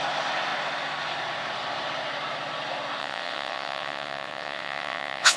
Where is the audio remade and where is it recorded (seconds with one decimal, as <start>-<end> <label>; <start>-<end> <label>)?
0.0-3.0 recorded; 3.0-5.4 remade